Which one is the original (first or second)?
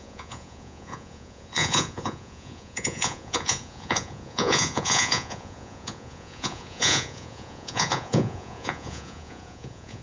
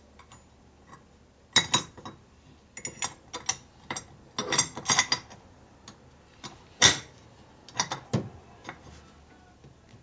second